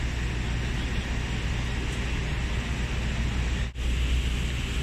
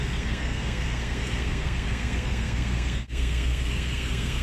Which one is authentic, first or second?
first